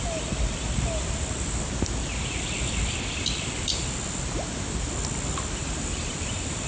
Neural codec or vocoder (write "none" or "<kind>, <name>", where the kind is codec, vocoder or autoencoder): none